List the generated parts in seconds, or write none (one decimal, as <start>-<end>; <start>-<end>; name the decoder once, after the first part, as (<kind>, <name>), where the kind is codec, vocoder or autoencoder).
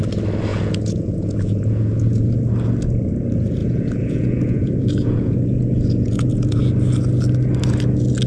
0.5-2.5 (vocoder, Vocos); 3.6-6.6